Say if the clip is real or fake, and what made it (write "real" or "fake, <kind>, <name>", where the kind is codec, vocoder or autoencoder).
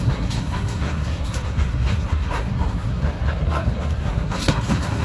fake, codec, SNAC